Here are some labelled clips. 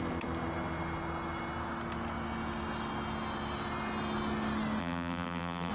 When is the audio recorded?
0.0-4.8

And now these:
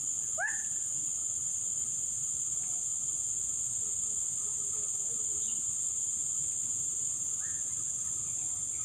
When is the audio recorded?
0.0-1.2; 2.3-8.8

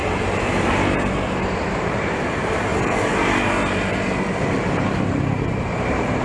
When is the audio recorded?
0.0-1.1; 2.7-4.3

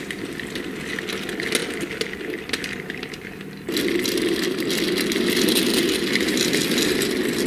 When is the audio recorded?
0.0-7.5

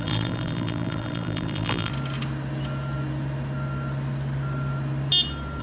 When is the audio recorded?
1.9-5.6

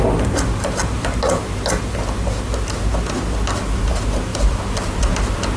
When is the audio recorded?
0.0-4.3; 5.1-5.6

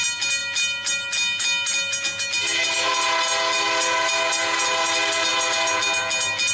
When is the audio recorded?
0.0-6.5

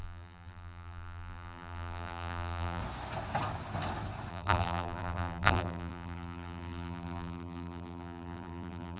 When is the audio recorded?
2.8-4.3